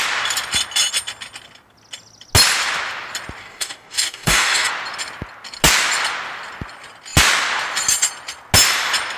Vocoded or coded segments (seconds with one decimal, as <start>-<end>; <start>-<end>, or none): 3.4-4.7

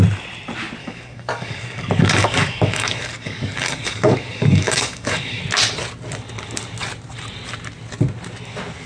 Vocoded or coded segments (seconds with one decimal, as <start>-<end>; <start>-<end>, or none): 0.8-5.4

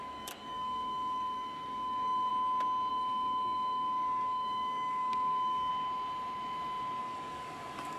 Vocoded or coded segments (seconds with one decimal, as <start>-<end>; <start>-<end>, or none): 0.0-2.3; 2.9-5.7; 7.0-8.0

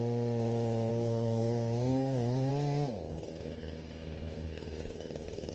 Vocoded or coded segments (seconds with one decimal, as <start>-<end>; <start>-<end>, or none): 0.9-2.5; 3.1-5.5

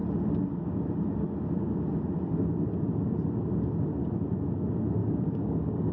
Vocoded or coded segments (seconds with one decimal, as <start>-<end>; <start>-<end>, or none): 5.0-5.9